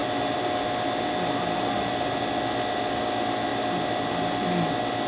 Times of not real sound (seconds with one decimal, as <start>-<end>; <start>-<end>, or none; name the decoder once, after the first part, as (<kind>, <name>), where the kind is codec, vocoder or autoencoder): none